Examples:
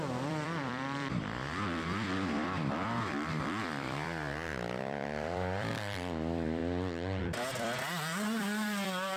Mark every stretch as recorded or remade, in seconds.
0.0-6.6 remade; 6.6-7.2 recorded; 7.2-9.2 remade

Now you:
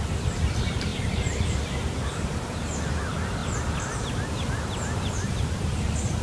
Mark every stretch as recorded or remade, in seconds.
0.0-3.4 remade; 3.4-5.4 recorded; 5.4-6.2 remade

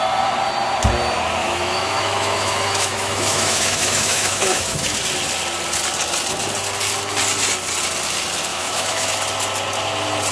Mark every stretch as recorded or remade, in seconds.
0.0-1.4 recorded; 1.4-5.0 remade; 5.0-8.5 recorded; 8.5-9.1 remade; 9.1-10.3 recorded

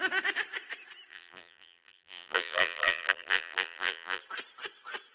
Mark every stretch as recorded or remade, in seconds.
0.0-1.1 recorded; 1.1-4.2 remade; 4.2-5.1 recorded

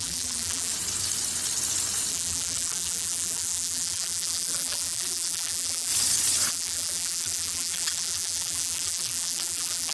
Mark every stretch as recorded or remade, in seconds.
0.0-0.7 remade; 0.7-2.1 recorded; 2.1-5.9 remade; 5.9-6.5 recorded; 6.5-9.9 remade